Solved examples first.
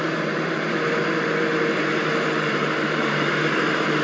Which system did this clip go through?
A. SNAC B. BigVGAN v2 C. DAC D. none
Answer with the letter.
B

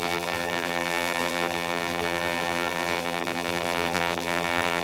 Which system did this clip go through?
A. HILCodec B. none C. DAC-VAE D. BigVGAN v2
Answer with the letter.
D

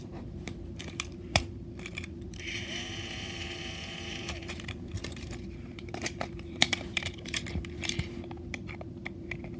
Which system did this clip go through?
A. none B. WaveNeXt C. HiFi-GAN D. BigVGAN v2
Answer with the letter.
D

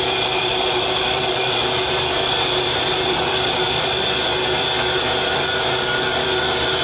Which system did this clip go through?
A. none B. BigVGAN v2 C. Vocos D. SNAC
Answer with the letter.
B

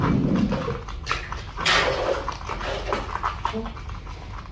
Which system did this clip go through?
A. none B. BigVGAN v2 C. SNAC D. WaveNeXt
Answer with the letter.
A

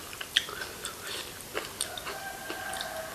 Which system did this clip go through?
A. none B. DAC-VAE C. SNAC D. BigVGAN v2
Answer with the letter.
A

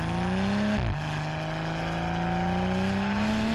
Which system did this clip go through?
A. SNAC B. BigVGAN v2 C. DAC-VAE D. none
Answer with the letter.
D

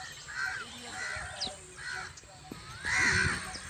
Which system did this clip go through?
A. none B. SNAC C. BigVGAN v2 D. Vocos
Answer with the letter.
A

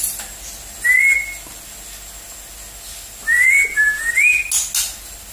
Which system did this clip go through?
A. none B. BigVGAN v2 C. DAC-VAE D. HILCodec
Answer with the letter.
A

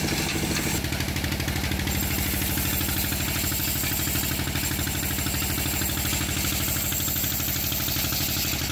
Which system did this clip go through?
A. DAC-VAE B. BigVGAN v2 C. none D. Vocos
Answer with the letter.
C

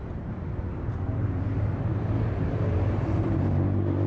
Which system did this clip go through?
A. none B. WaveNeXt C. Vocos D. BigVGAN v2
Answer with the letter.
D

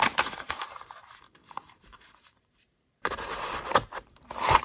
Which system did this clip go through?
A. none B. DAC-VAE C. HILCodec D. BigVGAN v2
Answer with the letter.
D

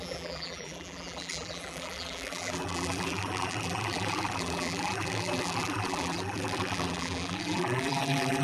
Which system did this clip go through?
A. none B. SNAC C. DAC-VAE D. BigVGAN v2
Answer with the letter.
D